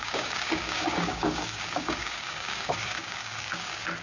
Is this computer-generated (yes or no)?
yes